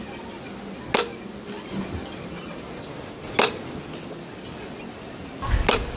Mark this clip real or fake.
real